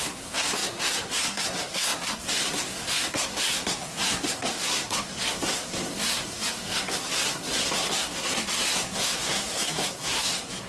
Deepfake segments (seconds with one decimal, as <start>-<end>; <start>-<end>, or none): 0.0-10.7